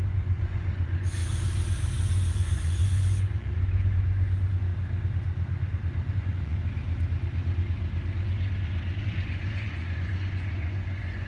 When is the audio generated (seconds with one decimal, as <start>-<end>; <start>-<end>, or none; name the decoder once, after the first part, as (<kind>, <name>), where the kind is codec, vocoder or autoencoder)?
0.0-1.2 (vocoder, Vocos); 2.3-4.7; 6.1-6.6; 9.0-11.3